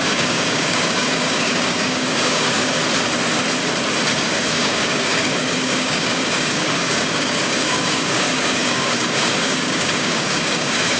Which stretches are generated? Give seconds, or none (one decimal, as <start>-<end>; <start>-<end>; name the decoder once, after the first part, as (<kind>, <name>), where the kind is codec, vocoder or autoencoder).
0.0-2.8 (codec, DAC); 4.1-11.0